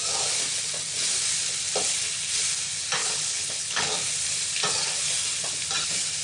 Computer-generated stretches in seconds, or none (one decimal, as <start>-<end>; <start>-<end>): 3.0-3.9